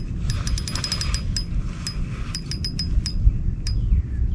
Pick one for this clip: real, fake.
real